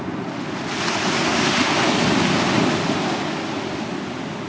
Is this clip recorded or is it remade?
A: recorded